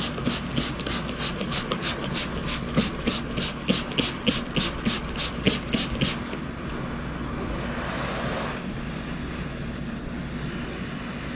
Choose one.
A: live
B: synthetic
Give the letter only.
A